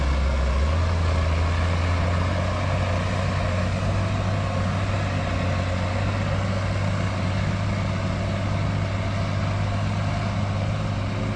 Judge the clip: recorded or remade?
recorded